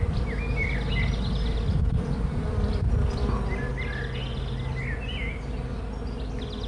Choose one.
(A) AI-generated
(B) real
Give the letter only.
B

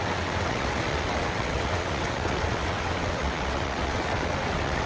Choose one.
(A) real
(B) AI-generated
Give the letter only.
B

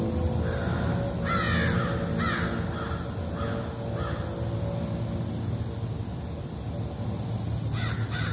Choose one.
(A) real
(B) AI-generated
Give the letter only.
A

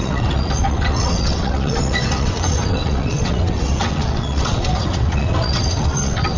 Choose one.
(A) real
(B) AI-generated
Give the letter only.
B